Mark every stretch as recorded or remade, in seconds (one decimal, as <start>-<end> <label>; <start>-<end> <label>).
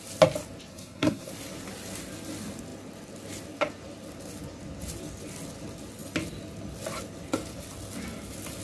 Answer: 0.0-0.7 recorded; 0.7-1.3 remade; 1.3-8.6 recorded